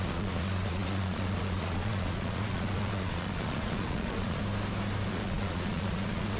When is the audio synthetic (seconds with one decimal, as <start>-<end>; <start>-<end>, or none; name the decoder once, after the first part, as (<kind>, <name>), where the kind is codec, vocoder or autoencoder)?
0.0-4.4 (vocoder, Vocos); 5.1-6.4